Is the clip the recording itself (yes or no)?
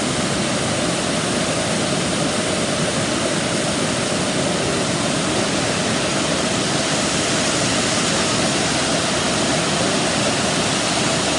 yes